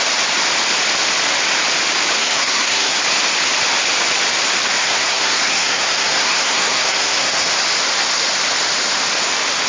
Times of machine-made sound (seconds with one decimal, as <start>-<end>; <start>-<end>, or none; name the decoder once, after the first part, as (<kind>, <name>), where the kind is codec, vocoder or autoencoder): 2.2-3.0 (codec, SNAC); 4.8-7.5